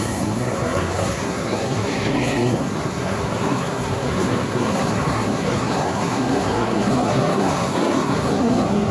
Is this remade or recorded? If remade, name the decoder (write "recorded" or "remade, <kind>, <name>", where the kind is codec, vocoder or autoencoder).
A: remade, codec, SNAC